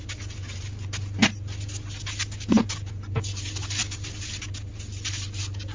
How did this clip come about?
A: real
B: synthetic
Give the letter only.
A